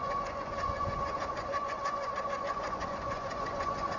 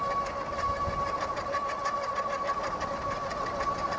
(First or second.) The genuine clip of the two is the second